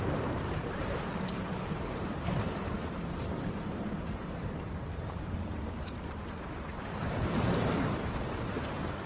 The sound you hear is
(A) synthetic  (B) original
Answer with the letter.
A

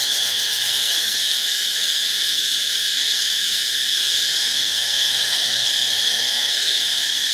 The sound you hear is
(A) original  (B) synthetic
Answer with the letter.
B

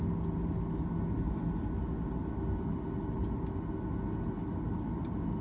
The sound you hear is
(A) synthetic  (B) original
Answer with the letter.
B